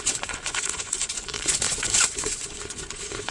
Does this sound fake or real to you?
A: fake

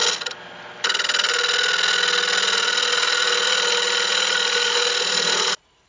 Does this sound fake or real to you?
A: real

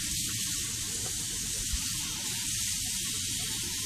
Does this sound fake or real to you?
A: real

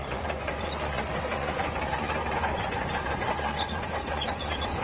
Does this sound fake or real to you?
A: fake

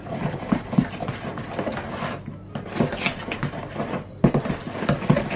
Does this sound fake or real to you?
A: real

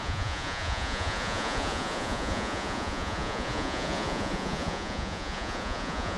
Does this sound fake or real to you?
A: fake